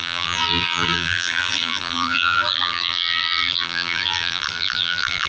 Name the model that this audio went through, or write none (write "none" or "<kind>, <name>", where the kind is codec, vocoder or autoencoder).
vocoder, BigVGAN v2